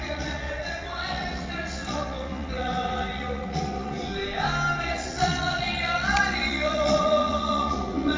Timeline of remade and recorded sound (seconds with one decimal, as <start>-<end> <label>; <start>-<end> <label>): 0.0-4.1 remade; 4.1-4.8 recorded; 4.8-8.2 remade